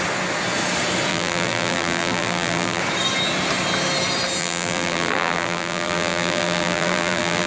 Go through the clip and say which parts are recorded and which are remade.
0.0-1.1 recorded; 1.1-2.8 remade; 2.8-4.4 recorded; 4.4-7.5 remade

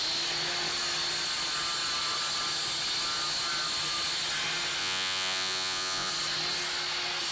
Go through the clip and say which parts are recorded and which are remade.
0.0-4.8 recorded; 4.8-6.1 remade; 6.1-7.3 recorded

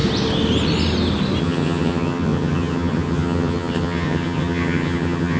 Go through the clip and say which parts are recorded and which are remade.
0.0-1.4 recorded; 1.4-5.4 remade

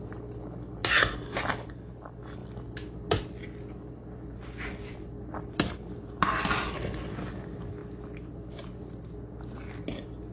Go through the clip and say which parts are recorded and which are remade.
0.0-10.3 recorded

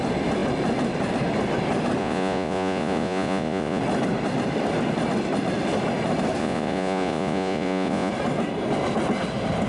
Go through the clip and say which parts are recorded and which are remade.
0.0-2.0 recorded; 2.0-3.8 remade; 3.8-6.4 recorded; 6.4-8.1 remade; 8.1-9.7 recorded